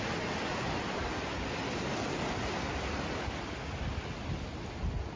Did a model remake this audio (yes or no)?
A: no